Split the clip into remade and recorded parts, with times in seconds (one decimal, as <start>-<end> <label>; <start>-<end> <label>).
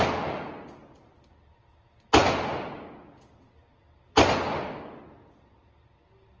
0.0-6.4 recorded